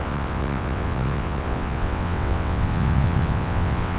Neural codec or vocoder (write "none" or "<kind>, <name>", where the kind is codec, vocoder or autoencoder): vocoder, WaveNeXt